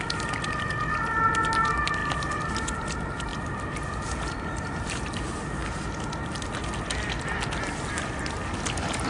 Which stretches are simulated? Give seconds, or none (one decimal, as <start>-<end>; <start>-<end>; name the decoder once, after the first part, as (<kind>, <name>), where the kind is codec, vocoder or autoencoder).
2.0-2.5 (vocoder, BigVGAN v2)

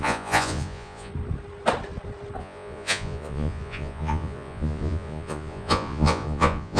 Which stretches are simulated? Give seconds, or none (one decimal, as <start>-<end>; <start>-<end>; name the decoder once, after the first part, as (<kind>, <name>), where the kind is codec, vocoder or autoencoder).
0.0-1.1 (vocoder, Vocos); 2.4-6.8

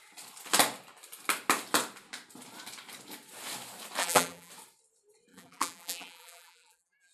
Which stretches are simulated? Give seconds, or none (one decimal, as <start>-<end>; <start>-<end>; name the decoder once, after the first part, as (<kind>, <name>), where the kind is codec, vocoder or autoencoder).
4.0-4.5 (vocoder, BigVGAN v2); 5.3-7.1